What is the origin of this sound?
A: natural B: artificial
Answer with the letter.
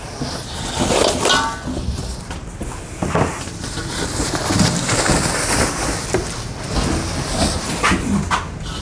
A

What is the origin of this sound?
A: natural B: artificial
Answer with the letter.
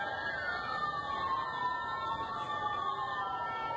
A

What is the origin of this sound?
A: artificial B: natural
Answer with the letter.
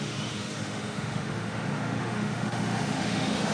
A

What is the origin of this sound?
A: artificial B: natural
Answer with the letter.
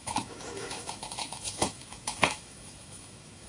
A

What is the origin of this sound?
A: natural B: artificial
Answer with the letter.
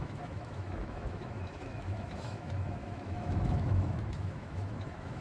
B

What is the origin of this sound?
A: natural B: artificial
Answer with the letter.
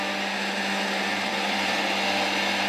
A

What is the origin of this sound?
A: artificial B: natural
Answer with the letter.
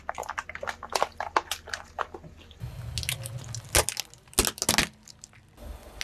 B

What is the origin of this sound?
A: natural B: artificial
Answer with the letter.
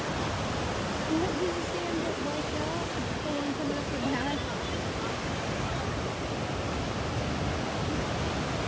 A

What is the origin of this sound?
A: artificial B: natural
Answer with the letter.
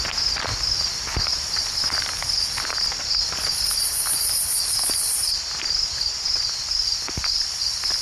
B